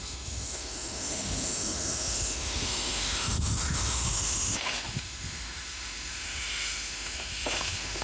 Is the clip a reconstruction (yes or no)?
yes